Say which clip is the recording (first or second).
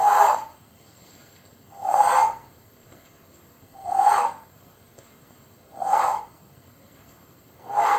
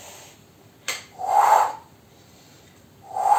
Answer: second